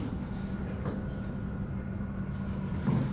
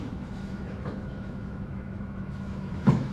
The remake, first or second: second